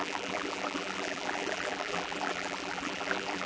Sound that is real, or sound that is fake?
fake